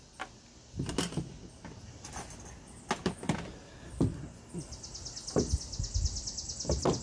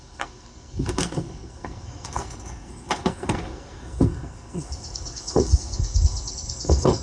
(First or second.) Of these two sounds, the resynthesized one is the second